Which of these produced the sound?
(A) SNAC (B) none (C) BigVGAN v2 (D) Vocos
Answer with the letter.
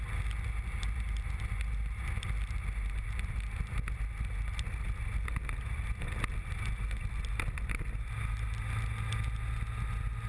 B